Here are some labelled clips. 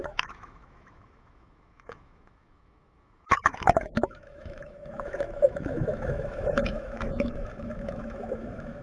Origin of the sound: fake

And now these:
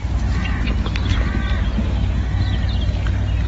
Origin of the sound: real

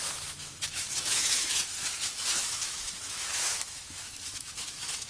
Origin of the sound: fake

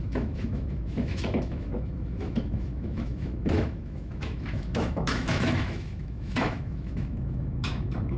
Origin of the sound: fake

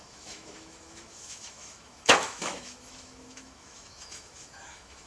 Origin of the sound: fake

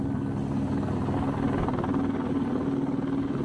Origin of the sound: real